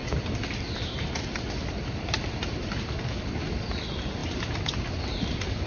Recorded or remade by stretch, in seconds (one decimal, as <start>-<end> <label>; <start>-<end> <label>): 0.0-5.7 recorded